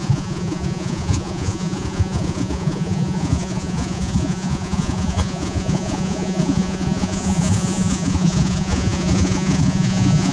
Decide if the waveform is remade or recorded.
remade